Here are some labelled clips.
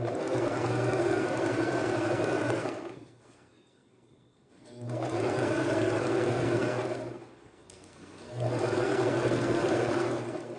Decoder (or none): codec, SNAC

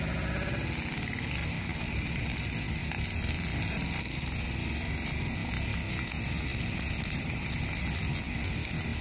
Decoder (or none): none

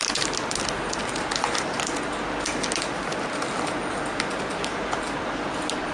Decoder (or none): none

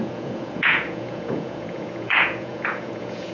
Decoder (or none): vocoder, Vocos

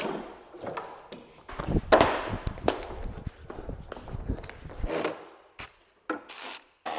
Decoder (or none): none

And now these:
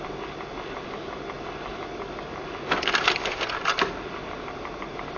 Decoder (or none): none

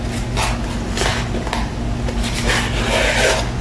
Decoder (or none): none